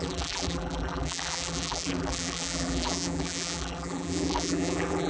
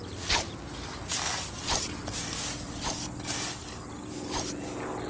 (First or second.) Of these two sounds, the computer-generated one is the first